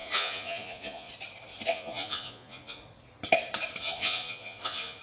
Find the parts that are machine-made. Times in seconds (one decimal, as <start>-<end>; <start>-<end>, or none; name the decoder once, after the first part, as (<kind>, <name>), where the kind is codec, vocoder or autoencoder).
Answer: 0.0-1.1 (vocoder, Vocos); 1.7-2.8; 3.8-5.0

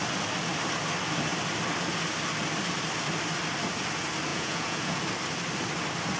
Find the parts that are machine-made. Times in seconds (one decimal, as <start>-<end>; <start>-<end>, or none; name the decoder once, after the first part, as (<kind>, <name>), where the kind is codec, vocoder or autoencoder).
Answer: 4.3-5.0 (vocoder, Vocos)